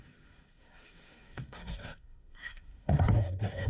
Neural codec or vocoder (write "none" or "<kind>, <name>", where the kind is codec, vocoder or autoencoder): codec, SNAC